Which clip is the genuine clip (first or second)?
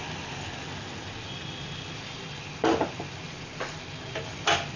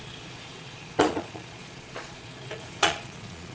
first